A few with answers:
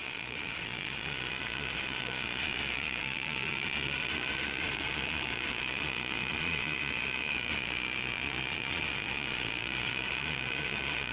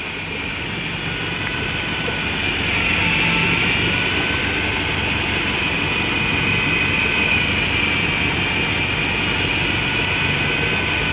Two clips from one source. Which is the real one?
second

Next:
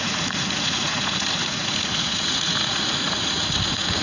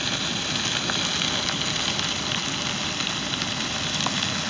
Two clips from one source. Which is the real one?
second